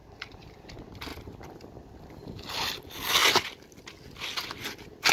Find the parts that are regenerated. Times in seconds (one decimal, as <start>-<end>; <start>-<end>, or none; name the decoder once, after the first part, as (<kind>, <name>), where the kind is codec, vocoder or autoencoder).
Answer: none